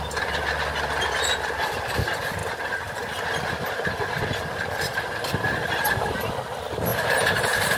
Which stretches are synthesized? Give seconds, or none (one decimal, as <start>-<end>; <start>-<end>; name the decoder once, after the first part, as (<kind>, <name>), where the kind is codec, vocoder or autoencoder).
6.9-7.8 (vocoder, BigVGAN v2)